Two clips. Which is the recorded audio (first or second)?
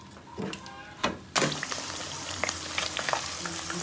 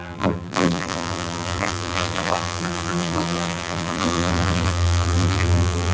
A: first